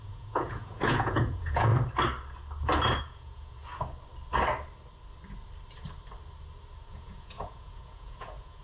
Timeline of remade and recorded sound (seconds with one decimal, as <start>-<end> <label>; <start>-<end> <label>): 0.0-1.7 remade; 1.7-3.0 recorded; 3.0-3.6 remade; 3.6-6.9 recorded; 6.9-8.6 remade